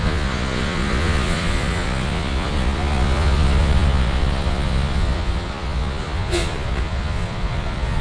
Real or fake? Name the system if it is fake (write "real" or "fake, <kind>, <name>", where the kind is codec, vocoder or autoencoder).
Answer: fake, vocoder, Vocos